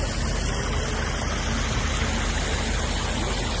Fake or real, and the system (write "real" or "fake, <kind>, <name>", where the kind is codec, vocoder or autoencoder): real